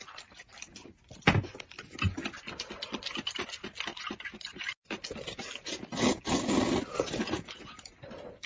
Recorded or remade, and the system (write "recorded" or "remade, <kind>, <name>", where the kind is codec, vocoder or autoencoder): recorded